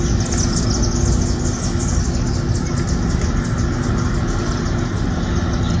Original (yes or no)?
yes